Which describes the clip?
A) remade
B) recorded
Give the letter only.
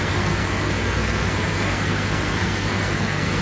A